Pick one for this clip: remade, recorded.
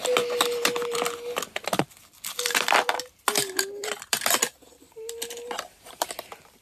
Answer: remade